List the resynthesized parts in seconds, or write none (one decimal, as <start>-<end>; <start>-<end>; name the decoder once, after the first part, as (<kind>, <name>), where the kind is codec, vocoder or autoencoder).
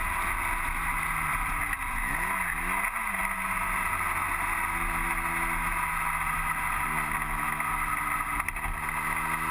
none